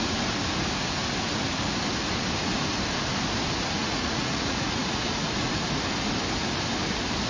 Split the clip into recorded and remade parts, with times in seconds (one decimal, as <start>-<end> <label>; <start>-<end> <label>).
0.0-3.8 recorded; 3.8-5.6 remade; 5.6-7.3 recorded